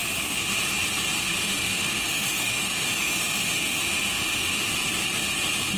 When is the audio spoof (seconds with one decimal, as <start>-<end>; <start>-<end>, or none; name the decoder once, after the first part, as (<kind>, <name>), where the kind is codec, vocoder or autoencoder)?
1.2-4.7 (autoencoder, DAC-VAE)